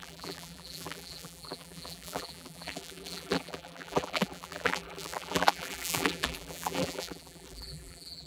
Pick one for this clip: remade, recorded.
remade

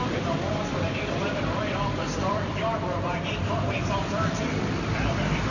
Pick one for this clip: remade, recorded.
remade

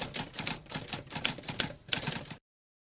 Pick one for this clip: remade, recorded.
remade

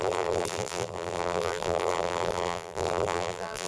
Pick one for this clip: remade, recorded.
remade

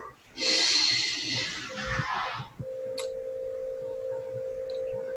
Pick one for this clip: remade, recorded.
recorded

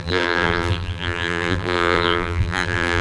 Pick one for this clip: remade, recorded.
remade